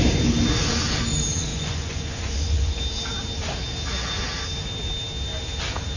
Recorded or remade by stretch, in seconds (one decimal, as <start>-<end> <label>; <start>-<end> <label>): 0.0-1.5 recorded; 1.5-2.8 remade; 2.8-6.0 recorded